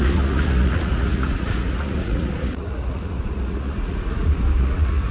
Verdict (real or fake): fake